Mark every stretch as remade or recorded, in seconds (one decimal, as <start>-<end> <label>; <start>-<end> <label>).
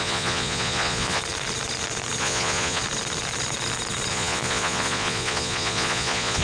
0.0-1.2 remade; 1.2-2.2 recorded; 2.2-2.8 remade; 2.8-4.1 recorded; 4.1-6.4 remade